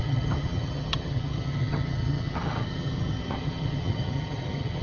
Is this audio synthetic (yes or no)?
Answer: yes